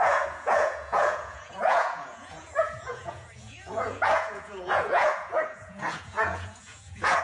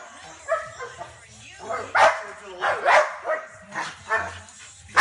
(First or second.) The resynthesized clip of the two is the first